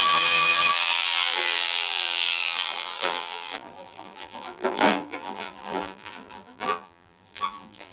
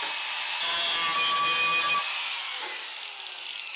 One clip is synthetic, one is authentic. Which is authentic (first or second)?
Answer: second